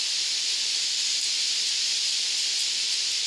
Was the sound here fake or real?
real